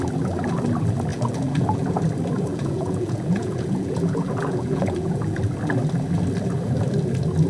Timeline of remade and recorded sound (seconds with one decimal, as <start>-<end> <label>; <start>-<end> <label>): 0.0-1.1 recorded; 1.1-2.0 remade; 2.0-2.5 recorded; 2.5-5.4 remade; 5.4-7.5 recorded